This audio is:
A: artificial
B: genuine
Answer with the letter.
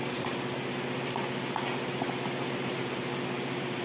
B